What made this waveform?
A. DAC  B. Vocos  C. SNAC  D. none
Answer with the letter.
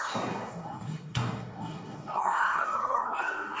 C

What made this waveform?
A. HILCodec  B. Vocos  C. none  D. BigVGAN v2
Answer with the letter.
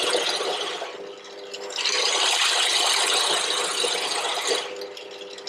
C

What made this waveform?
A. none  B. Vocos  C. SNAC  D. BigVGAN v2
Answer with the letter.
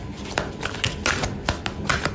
A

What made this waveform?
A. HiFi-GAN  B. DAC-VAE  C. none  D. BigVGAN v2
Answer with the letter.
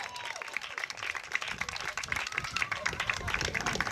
C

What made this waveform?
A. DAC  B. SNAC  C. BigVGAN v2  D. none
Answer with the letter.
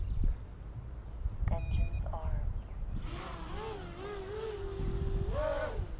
D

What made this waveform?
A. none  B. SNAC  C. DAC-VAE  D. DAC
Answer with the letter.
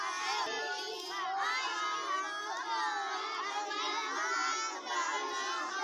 A